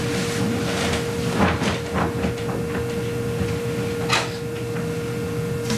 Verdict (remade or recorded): recorded